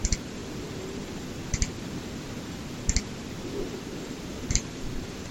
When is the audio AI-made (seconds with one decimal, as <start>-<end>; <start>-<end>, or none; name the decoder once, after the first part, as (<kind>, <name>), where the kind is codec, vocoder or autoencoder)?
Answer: 0.0-0.4 (vocoder, BigVGAN v2); 3.6-5.3

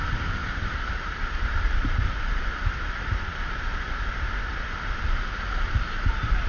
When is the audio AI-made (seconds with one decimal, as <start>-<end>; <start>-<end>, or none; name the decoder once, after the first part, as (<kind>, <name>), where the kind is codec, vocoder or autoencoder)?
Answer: 0.4-4.3 (vocoder, BigVGAN v2)

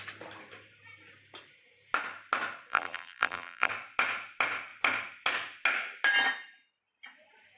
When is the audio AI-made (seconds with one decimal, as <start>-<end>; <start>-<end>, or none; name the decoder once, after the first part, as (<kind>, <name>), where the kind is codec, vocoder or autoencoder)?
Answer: 2.7-3.7 (vocoder, BigVGAN v2)